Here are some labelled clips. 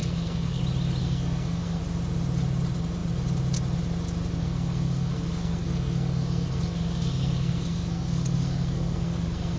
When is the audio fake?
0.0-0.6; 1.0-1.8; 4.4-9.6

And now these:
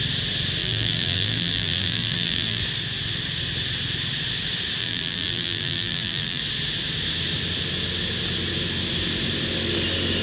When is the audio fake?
0.6-2.6; 4.8-6.4

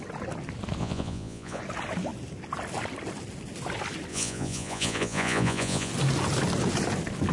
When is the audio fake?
0.8-1.6; 4.1-5.9

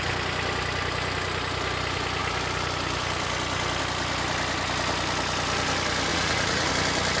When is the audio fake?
6.1-6.7

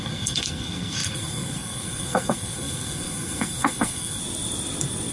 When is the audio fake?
0.0-4.2